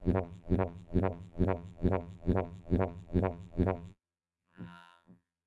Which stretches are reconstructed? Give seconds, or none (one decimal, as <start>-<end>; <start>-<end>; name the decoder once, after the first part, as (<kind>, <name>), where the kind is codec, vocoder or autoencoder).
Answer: 0.0-5.5 (vocoder, BigVGAN v2)